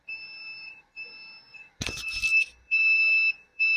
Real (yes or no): no